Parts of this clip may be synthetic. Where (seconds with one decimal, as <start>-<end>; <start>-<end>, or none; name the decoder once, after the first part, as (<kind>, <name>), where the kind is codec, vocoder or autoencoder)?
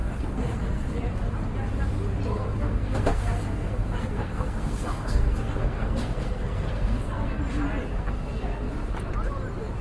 0.0-1.0 (codec, SNAC); 2.3-7.4; 7.9-8.7